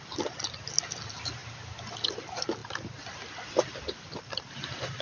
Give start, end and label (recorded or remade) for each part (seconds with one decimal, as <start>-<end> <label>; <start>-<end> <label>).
0.0-5.0 recorded